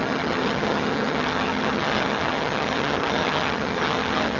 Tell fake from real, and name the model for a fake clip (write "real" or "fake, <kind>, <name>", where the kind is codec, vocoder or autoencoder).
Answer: fake, vocoder, HiFi-GAN